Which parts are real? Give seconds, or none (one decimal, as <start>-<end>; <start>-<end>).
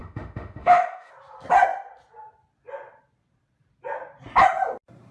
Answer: 1.1-5.1